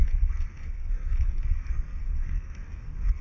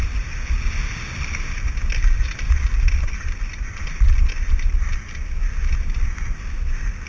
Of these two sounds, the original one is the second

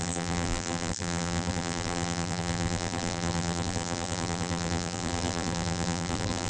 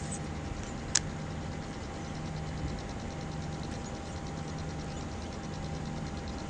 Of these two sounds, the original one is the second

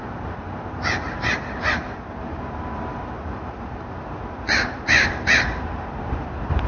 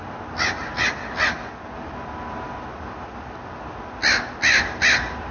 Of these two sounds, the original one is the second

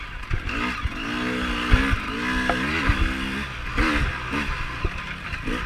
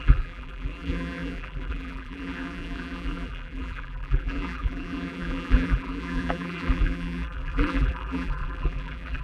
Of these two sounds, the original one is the first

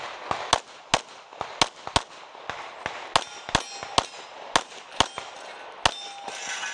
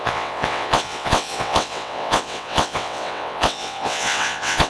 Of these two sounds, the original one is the first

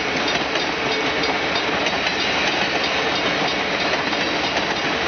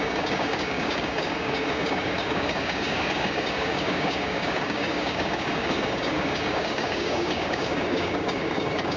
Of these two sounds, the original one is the first